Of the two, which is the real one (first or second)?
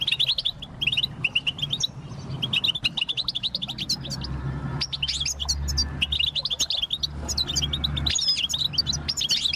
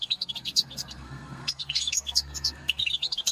first